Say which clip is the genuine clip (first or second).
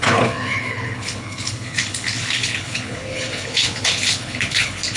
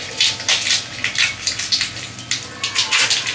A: second